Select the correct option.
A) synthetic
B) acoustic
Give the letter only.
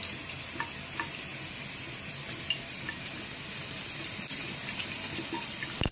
B